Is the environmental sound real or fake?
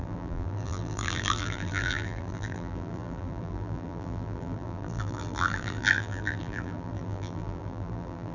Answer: fake